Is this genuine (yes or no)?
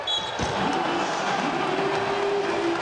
yes